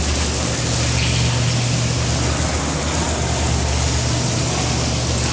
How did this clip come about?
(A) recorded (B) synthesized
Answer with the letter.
A